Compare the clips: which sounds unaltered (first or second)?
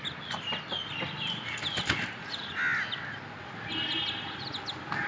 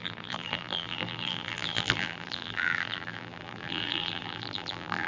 first